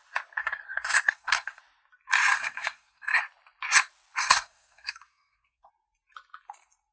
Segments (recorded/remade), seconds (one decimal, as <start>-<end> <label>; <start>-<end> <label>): 0.0-0.4 recorded; 0.4-1.6 remade; 1.6-2.3 recorded; 2.3-3.2 remade; 3.2-4.2 recorded; 4.2-5.7 remade; 5.7-6.9 recorded